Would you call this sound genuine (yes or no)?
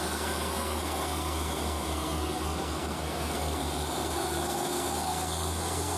no